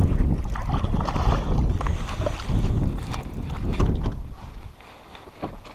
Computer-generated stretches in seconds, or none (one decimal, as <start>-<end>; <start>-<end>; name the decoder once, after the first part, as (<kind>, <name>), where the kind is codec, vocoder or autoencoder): none